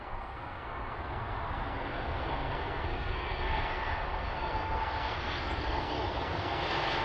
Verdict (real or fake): fake